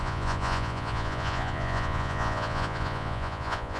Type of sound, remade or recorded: remade